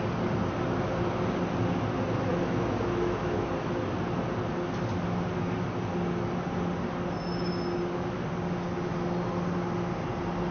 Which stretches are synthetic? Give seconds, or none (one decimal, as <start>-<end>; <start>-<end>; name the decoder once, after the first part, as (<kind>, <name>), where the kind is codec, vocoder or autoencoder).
2.3-3.5 (autoencoder, DAC-VAE)